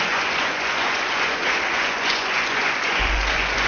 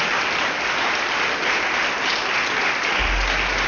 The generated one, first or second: first